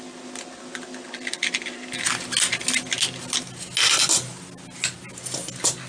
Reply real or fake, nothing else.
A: real